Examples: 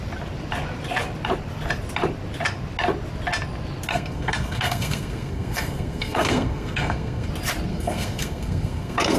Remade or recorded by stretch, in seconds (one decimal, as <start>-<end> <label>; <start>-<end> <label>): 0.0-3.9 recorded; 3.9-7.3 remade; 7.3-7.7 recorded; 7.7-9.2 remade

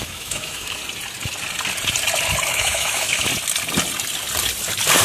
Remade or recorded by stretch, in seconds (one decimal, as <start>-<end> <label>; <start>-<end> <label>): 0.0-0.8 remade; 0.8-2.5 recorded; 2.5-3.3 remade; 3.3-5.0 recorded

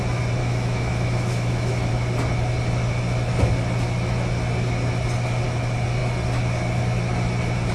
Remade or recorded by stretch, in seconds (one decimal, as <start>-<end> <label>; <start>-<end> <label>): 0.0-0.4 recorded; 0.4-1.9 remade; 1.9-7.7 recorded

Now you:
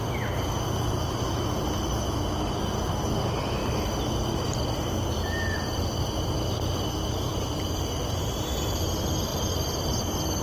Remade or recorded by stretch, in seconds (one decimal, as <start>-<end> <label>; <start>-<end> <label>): 0.0-7.3 recorded; 7.3-8.0 remade; 8.0-10.4 recorded

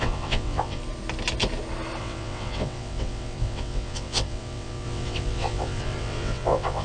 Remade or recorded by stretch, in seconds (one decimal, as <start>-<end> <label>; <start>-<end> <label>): 0.0-0.8 remade; 0.8-2.0 recorded; 2.0-6.8 remade

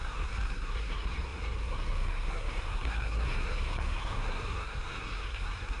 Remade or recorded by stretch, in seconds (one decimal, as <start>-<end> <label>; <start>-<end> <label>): 0.0-5.8 remade

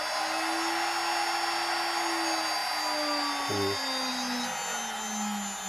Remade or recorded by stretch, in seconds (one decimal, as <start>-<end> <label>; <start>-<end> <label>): 0.0-5.7 recorded